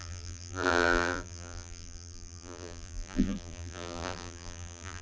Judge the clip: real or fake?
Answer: fake